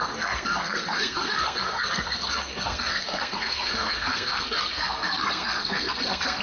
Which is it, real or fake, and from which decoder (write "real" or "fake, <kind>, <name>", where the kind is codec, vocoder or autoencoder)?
fake, codec, SNAC